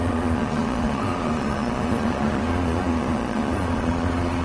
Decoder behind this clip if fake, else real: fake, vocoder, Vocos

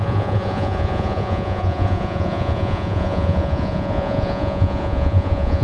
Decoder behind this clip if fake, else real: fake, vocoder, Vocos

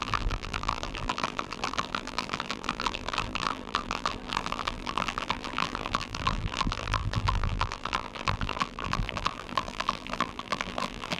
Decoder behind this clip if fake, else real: fake, vocoder, BigVGAN v2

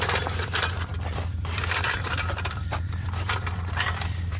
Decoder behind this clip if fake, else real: fake, vocoder, BigVGAN v2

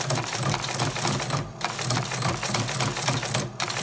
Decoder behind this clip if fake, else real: fake, vocoder, BigVGAN v2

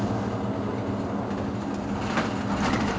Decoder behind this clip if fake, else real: real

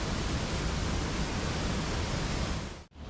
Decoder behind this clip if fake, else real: real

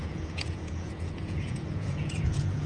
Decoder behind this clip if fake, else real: fake, vocoder, Vocos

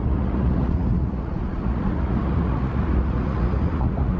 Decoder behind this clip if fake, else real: fake, vocoder, Vocos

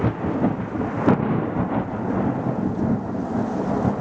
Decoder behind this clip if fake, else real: real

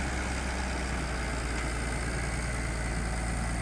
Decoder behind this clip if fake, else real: real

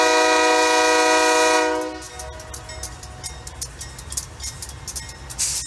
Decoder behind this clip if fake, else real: real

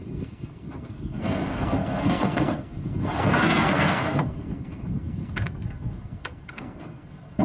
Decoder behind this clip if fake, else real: fake, codec, SNAC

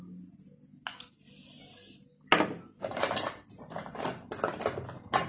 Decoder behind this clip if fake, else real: real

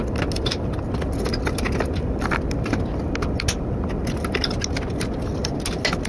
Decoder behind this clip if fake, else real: real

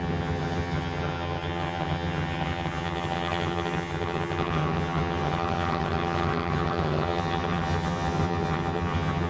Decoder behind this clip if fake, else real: fake, vocoder, HiFi-GAN